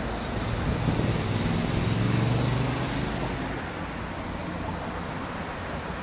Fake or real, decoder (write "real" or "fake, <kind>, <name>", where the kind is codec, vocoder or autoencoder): real